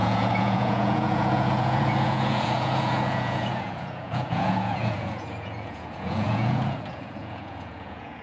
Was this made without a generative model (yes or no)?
no